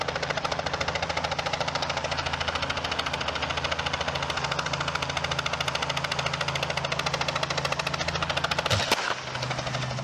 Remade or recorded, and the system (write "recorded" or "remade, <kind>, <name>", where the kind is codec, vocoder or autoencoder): recorded